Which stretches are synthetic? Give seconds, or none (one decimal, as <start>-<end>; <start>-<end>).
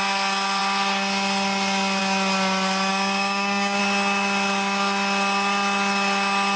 2.9-3.8